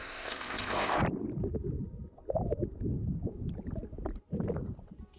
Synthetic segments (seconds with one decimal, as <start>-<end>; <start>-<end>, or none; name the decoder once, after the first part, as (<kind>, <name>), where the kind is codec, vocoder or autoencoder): 0.0-1.0 (codec, ZipCodec)